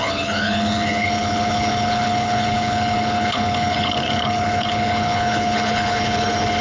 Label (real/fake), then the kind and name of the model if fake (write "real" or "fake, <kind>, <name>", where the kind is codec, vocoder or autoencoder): fake, codec, HILCodec